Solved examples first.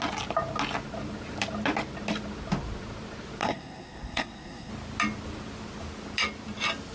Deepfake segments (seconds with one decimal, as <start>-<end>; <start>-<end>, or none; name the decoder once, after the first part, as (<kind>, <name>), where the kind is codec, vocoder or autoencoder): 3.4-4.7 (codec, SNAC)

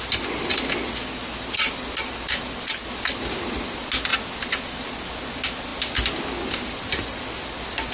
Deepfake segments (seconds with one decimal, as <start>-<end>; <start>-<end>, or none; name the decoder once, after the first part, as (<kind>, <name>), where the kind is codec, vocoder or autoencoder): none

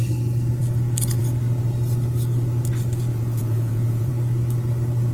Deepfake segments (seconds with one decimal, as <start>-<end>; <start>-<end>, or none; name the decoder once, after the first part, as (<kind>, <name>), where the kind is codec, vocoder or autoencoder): 3.1-4.1 (vocoder, Vocos)

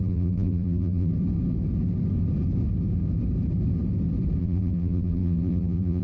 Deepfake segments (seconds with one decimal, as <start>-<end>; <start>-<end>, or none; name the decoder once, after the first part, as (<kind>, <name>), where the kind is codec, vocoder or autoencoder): 0.0-1.1 (vocoder, BigVGAN v2); 4.4-6.0

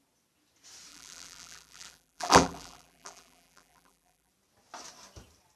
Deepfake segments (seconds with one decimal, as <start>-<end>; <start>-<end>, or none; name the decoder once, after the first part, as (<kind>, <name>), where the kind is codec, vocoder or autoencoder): 0.9-4.3 (vocoder, BigVGAN v2)